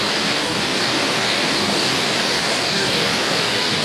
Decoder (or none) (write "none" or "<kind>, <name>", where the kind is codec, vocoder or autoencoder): codec, DAC